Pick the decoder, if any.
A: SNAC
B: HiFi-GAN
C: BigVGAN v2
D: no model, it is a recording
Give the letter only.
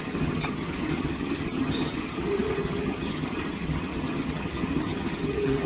B